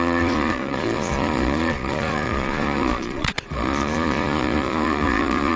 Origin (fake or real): fake